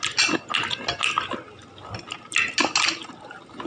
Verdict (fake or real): real